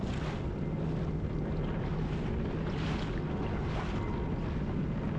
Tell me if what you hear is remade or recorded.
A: recorded